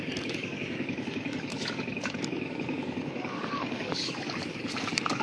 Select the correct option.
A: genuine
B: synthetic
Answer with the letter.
B